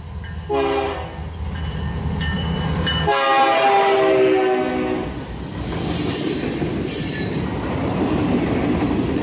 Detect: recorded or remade recorded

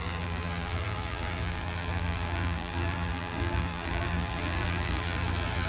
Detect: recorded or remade remade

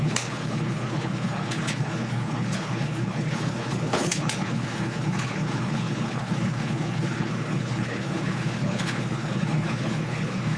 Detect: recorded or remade remade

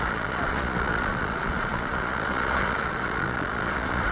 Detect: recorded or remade remade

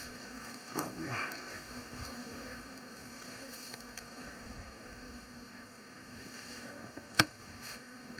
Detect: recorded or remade remade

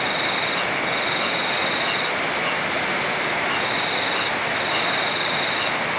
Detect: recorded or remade recorded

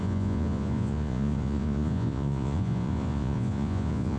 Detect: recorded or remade remade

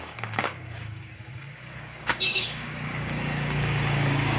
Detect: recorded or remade remade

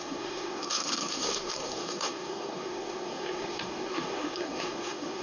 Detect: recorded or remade remade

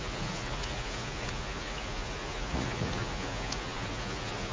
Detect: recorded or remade remade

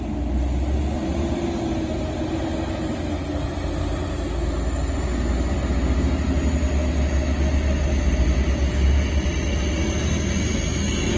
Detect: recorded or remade recorded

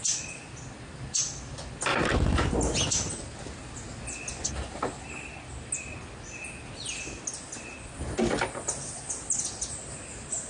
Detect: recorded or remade recorded